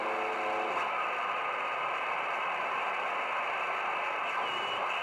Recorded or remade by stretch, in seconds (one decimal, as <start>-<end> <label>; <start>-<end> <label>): 0.0-3.0 remade; 3.0-4.2 recorded; 4.2-5.0 remade

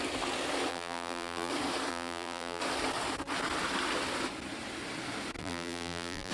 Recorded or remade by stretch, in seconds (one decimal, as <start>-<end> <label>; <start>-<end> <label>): 0.0-0.7 recorded; 0.7-1.5 remade; 1.5-1.9 recorded; 1.9-2.6 remade; 2.6-5.4 recorded; 5.4-6.3 remade